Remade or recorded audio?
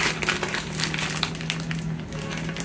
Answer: recorded